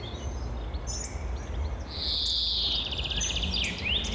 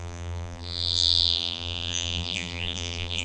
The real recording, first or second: first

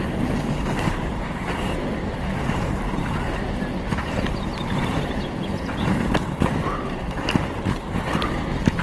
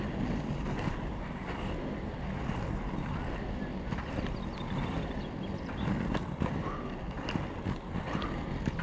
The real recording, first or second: second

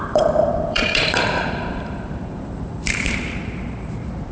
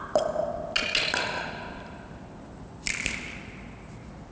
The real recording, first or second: second